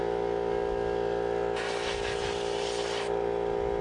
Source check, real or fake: real